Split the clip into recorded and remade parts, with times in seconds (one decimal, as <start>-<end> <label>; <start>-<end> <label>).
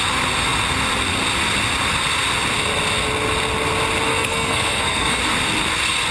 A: 0.0-4.1 recorded; 4.1-5.2 remade; 5.2-6.1 recorded